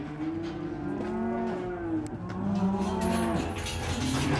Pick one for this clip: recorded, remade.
recorded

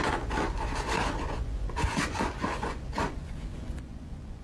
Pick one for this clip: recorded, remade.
remade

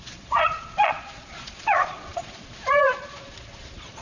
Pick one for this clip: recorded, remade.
remade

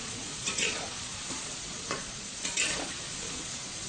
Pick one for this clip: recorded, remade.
remade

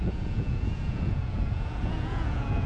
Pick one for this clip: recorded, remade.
remade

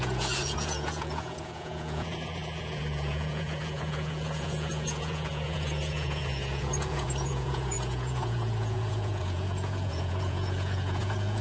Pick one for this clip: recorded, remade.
remade